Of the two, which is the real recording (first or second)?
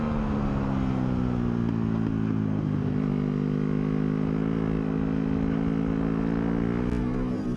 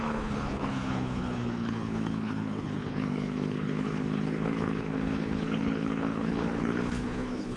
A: first